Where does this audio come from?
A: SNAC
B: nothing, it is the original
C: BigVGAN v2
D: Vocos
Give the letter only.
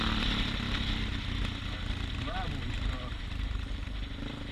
B